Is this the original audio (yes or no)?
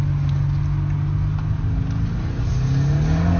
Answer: yes